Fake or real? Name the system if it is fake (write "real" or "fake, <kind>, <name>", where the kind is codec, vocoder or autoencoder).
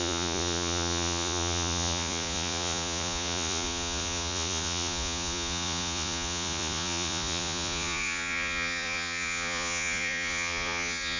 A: fake, vocoder, Vocos